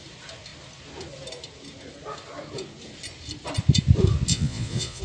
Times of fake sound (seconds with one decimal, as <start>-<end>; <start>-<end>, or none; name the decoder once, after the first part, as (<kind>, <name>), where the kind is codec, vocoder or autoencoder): 4.3-5.0 (vocoder, Vocos)